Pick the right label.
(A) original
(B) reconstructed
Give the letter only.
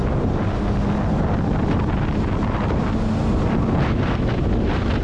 A